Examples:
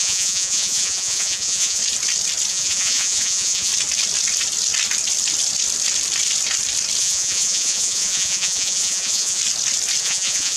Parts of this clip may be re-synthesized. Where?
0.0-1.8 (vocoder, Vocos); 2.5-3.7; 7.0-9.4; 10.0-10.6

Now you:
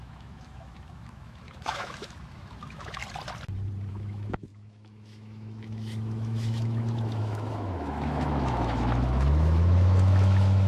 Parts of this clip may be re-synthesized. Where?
0.0-3.0 (autoencoder, DAC-VAE); 3.9-10.7

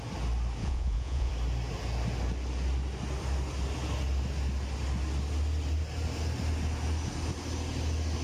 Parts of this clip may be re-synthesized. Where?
0.6-1.3 (vocoder, Vocos)

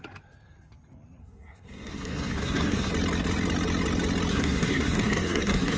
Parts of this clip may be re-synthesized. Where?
1.2-2.9 (codec, SNAC); 4.3-5.8

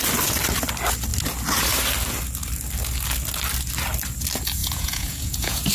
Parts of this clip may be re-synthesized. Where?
4.6-5.7 (vocoder, Vocos)